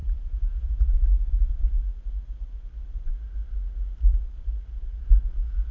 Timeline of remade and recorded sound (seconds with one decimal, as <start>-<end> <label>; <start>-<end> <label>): 0.0-1.9 remade; 1.9-5.3 recorded; 5.3-5.7 remade